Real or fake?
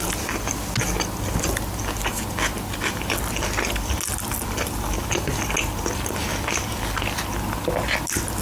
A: real